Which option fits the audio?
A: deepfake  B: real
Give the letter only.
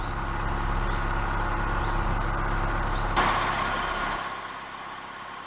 B